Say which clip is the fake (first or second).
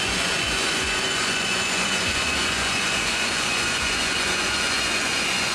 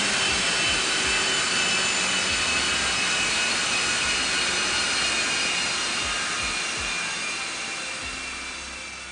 first